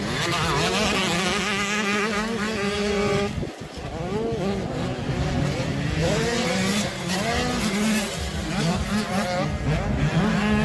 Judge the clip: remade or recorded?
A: recorded